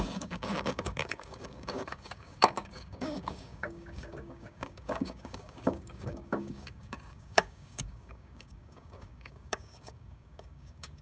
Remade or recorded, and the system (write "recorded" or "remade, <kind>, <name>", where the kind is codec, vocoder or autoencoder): remade, codec, DAC